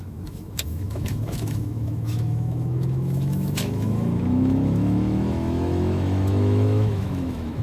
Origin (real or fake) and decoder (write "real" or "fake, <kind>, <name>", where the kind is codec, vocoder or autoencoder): fake, autoencoder, DAC-VAE